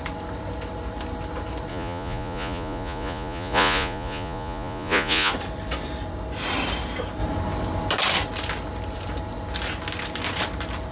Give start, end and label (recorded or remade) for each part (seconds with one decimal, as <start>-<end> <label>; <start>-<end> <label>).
0.0-1.7 recorded; 1.7-5.3 remade; 5.3-10.9 recorded

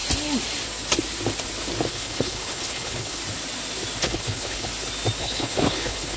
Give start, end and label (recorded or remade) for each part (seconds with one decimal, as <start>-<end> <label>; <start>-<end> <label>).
0.0-1.9 recorded; 1.9-3.2 remade; 3.2-4.0 recorded; 4.0-4.7 remade; 4.7-5.2 recorded; 5.2-6.2 remade

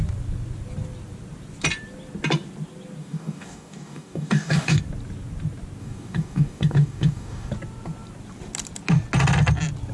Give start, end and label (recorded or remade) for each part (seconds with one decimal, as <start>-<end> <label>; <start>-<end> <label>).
0.0-3.0 recorded; 3.0-4.8 remade; 4.8-5.8 recorded; 5.8-7.5 remade; 7.5-9.9 recorded

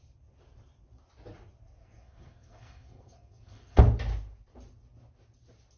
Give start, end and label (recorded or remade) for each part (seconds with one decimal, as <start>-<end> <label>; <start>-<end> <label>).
0.0-1.8 recorded; 1.8-3.8 remade; 3.8-5.8 recorded

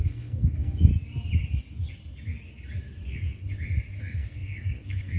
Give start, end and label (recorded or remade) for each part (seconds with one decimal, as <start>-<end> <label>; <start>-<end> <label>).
0.0-0.9 remade; 0.9-4.0 recorded; 4.0-5.2 remade

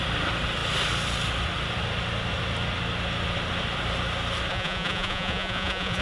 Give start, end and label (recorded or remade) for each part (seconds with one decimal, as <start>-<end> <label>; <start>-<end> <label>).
0.0-4.5 recorded; 4.5-6.0 remade